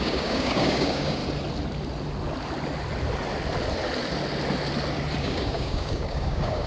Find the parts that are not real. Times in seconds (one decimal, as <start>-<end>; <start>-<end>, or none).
0.0-1.2; 5.2-6.7